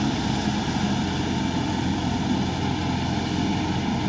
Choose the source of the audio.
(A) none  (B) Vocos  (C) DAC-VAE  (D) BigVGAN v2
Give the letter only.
A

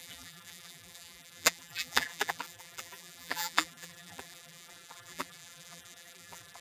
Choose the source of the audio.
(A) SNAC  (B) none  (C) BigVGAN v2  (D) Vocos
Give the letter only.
C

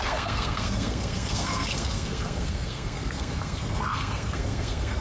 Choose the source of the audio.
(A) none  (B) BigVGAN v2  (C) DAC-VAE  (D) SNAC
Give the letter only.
D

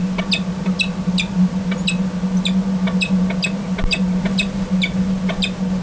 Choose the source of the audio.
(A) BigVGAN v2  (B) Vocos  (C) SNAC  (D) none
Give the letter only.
D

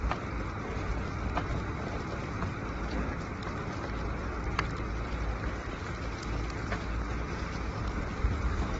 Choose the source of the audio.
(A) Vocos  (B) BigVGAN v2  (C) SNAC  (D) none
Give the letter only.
B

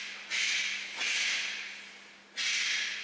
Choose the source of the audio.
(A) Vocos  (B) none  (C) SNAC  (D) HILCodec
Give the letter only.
B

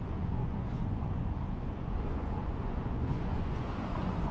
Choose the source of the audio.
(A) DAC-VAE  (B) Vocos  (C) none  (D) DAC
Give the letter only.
B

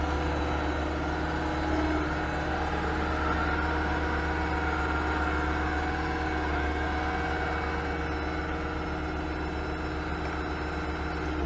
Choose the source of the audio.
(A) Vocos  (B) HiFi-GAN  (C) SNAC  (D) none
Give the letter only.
D